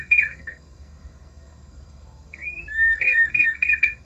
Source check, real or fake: fake